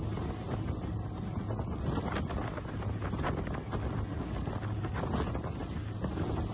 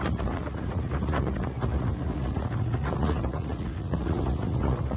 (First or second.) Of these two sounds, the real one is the first